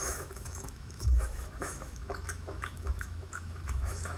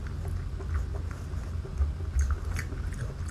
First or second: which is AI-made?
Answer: first